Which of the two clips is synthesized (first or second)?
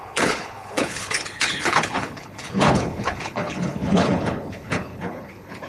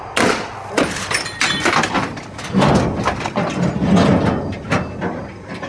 first